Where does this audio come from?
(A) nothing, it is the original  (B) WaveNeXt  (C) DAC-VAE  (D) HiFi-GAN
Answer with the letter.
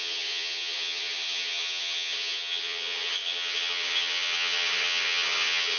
D